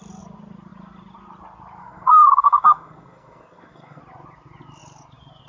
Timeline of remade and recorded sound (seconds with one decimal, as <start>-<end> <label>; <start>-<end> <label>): 0.0-1.8 recorded; 1.8-4.0 remade; 4.0-5.5 recorded